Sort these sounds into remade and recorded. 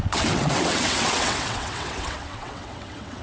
remade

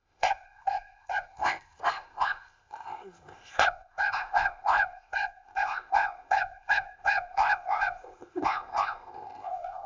remade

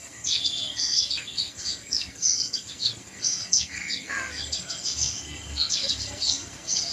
remade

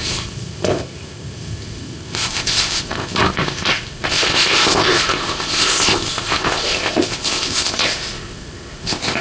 remade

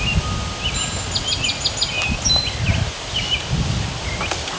recorded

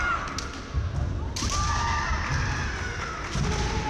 recorded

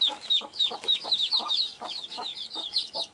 remade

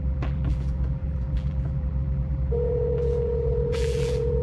remade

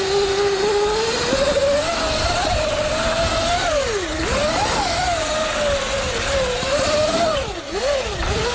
recorded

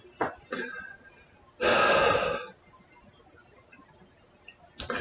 recorded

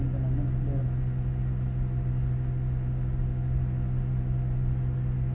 recorded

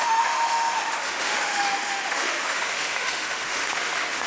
remade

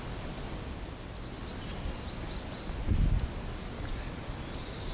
recorded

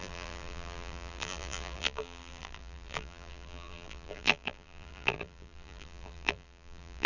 remade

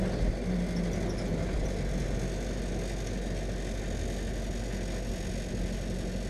recorded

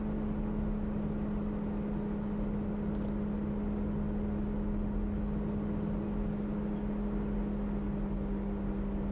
recorded